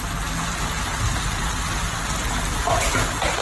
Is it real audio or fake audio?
real